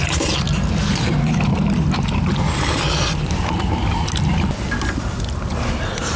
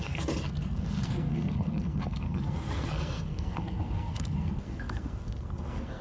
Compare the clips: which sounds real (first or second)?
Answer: first